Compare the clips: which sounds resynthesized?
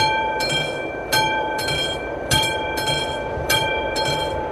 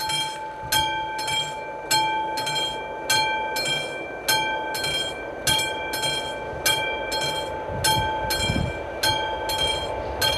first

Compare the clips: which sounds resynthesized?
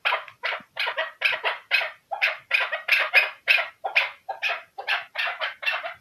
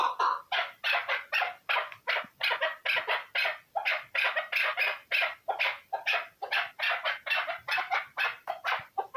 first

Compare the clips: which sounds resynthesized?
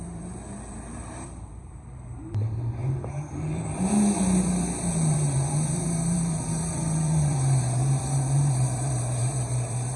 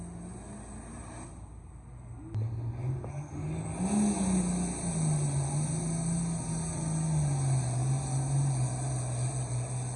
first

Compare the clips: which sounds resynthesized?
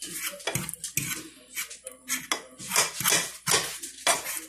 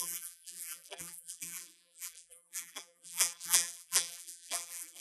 second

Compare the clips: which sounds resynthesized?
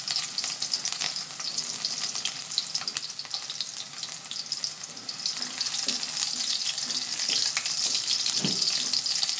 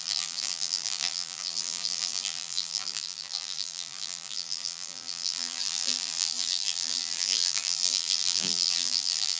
second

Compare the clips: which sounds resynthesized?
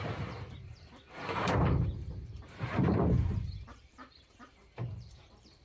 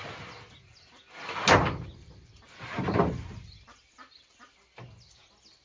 first